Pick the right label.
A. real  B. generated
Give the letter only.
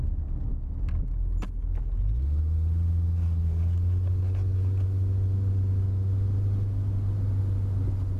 A